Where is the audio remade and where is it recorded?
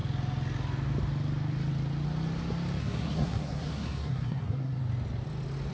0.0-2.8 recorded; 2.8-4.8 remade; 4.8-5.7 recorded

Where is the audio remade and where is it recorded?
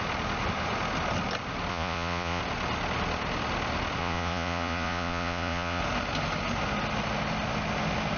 0.0-1.7 recorded; 1.7-2.4 remade; 2.4-4.0 recorded; 4.0-5.8 remade; 5.8-8.2 recorded